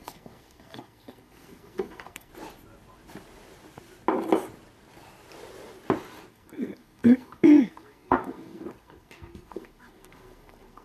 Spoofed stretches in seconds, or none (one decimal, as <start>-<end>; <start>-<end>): 0.0-2.3; 6.3-10.8